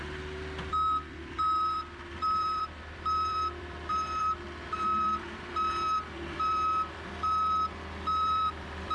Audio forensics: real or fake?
fake